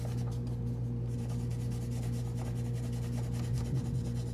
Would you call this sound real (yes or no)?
yes